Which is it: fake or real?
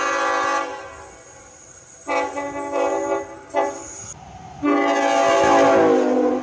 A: real